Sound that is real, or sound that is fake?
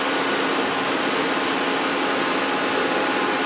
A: real